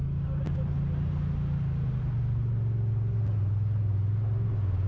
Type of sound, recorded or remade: recorded